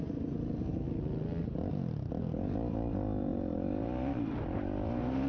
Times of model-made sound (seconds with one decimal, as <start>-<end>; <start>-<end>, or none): none